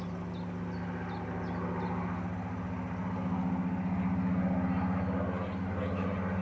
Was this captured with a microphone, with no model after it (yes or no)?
yes